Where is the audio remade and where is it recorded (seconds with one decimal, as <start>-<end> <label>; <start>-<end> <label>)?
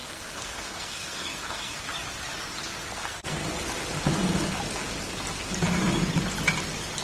0.0-1.8 remade; 1.8-2.8 recorded; 2.8-3.4 remade; 3.4-7.0 recorded